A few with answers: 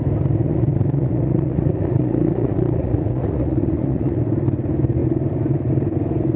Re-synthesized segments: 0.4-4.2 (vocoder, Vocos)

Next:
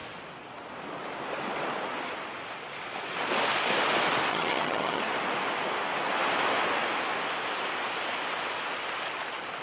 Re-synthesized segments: 4.3-5.0 (vocoder, HiFi-GAN)

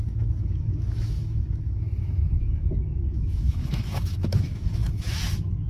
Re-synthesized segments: 0.0-5.7 (autoencoder, DAC-VAE)

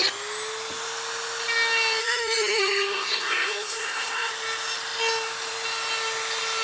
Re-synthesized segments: 2.0-4.3 (codec, SNAC)

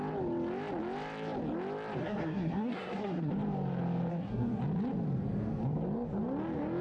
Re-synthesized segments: 2.0-3.3 (codec, SNAC); 4.1-4.6

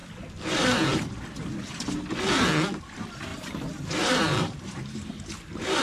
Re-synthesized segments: 0.0-1.1 (vocoder, BigVGAN v2); 3.3-5.8

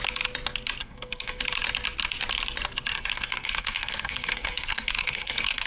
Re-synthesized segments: 0.8-1.4 (codec, SNAC); 2.9-5.7

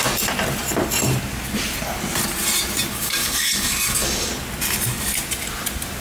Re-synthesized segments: 2.9-4.3 (codec, DAC)